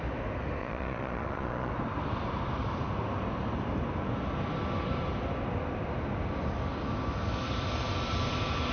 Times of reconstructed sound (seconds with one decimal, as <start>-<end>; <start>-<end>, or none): 0.6-1.7